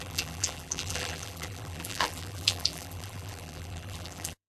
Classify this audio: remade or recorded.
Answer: remade